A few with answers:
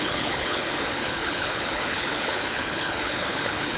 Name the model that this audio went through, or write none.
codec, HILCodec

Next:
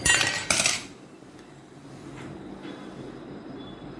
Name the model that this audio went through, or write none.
vocoder, BigVGAN v2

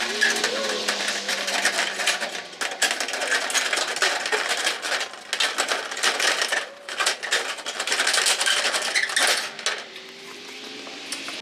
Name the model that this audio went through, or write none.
none